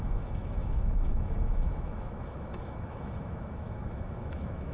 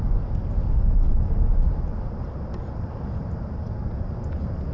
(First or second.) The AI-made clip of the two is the first